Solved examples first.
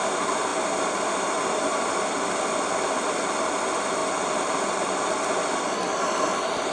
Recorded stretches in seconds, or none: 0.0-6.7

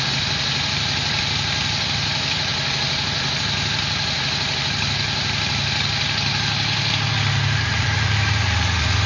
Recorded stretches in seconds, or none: 2.5-7.1

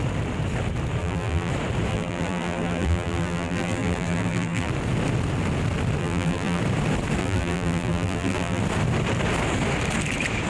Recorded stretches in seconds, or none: 0.0-1.0; 1.5-1.9; 4.7-6.0; 6.6-7.2; 8.6-10.5

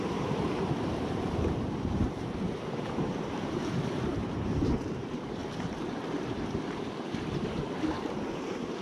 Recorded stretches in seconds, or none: 5.4-5.9